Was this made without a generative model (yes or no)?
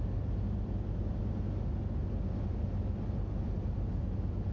yes